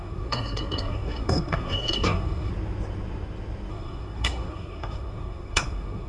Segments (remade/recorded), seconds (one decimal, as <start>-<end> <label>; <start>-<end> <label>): 0.0-2.5 remade; 2.5-3.7 recorded; 3.7-6.1 remade